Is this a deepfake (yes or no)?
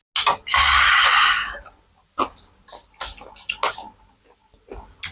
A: no